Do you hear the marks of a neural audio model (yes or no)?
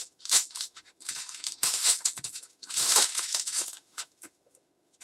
yes